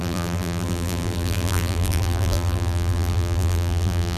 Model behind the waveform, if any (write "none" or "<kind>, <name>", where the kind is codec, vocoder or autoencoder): vocoder, BigVGAN v2